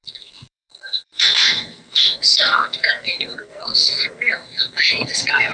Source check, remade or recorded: remade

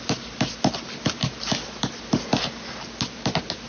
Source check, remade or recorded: recorded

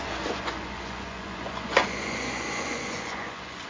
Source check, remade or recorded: remade